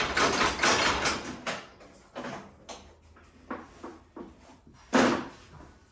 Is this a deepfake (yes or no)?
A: no